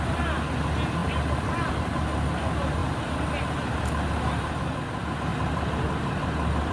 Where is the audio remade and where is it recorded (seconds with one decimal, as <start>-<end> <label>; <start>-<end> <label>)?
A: 0.0-6.7 recorded